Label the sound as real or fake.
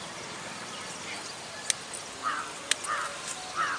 real